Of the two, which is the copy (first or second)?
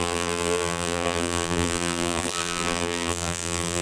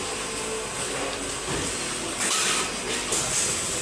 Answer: first